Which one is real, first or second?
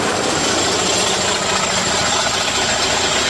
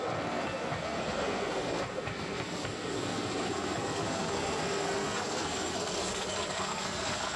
first